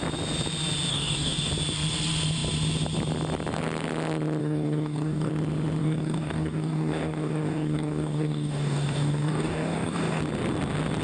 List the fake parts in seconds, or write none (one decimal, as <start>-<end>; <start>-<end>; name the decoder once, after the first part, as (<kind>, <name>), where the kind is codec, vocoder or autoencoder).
0.9-1.5 (codec, DAC); 4.4-5.3; 5.8-10.2